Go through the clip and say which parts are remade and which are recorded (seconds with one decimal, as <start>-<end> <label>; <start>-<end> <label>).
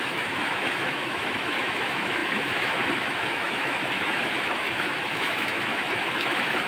0.0-6.7 remade